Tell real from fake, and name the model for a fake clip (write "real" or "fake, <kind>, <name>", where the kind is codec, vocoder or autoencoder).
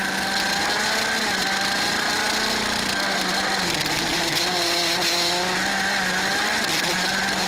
real